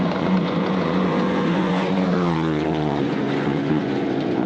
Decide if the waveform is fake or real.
fake